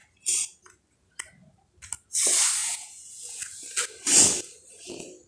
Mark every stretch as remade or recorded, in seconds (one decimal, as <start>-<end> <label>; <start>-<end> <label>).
0.0-2.6 recorded; 2.6-3.4 remade; 3.4-5.3 recorded